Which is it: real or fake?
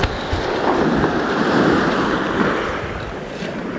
real